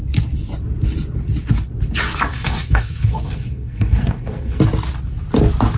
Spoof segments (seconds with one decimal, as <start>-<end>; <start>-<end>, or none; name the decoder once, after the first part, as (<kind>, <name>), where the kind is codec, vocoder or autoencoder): 2.3-4.6 (codec, SNAC)